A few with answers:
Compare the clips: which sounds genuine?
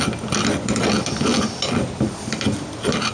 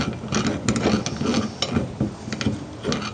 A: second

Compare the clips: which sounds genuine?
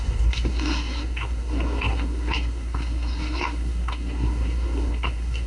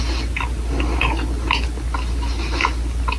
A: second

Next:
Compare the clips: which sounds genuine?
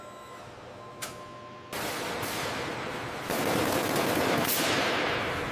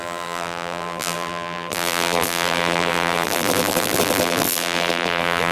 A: first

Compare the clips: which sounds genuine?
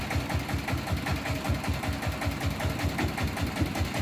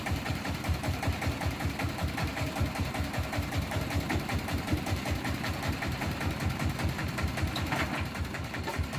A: first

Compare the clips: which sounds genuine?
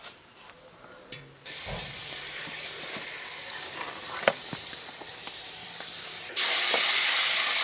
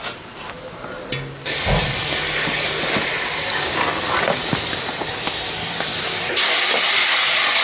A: second